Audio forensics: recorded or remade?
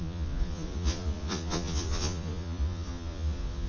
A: remade